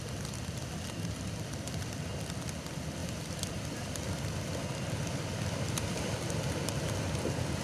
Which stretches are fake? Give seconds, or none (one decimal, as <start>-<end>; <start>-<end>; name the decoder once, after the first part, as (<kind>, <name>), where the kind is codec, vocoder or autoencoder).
3.0-5.2 (vocoder, BigVGAN v2)